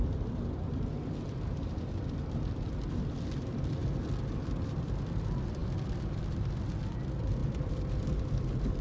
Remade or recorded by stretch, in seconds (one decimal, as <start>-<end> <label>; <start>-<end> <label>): 0.0-3.8 remade; 3.8-4.6 recorded; 4.6-8.8 remade